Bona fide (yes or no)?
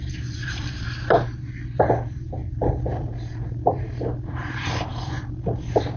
no